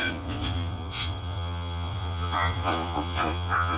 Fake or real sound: fake